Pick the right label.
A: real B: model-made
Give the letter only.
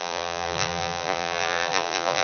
B